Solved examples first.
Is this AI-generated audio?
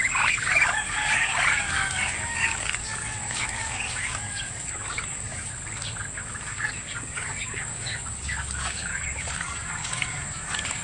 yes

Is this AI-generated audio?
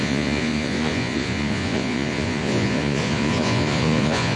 yes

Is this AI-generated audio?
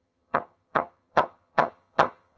yes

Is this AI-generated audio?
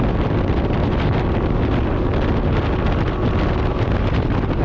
no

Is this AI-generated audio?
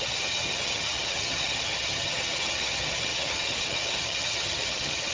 yes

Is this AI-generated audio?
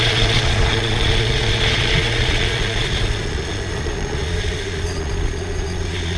yes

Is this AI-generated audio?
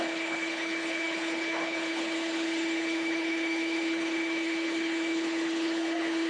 yes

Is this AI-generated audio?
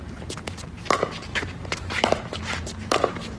yes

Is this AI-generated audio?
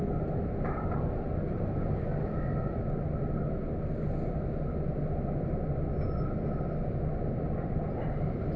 no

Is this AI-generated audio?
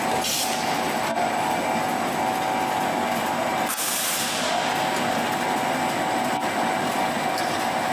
no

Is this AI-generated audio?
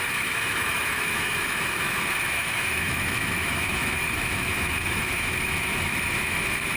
yes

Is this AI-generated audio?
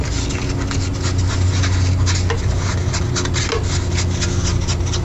no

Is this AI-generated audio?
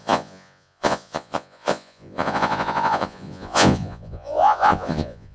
yes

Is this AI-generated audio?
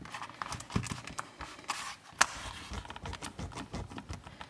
no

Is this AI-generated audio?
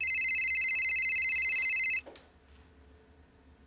no